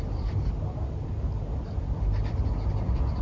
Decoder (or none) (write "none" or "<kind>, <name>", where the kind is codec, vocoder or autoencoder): none